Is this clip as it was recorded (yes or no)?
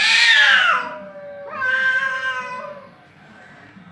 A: yes